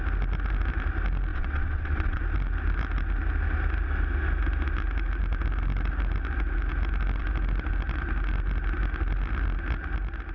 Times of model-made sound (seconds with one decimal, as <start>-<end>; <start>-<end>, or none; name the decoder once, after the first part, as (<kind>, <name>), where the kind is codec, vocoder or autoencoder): 1.3-2.2 (vocoder, WaveNeXt)